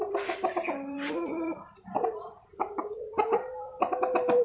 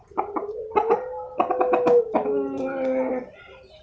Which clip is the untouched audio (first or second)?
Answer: second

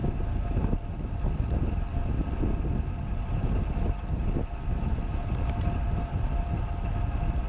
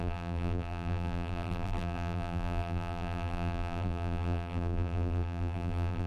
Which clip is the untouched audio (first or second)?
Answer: first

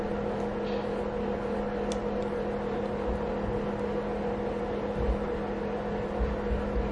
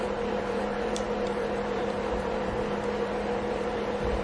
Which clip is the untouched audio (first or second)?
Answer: first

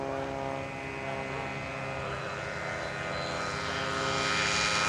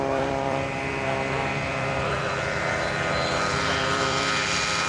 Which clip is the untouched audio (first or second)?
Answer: first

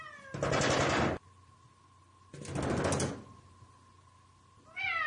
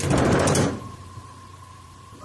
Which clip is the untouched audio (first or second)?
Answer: first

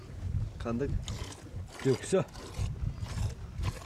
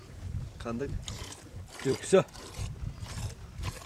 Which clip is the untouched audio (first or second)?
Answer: first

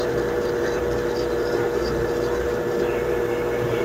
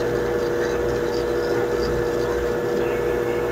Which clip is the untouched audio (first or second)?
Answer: second